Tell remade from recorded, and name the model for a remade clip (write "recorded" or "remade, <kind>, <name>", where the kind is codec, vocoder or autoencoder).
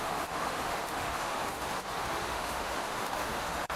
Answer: remade, autoencoder, DAC-VAE